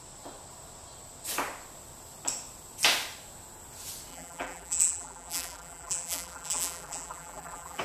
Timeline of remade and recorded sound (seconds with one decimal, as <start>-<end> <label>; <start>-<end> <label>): 0.0-4.1 recorded; 4.1-7.8 remade